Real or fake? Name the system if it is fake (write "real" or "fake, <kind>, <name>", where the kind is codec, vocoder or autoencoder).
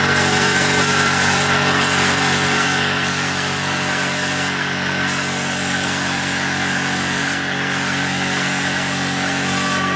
fake, codec, SNAC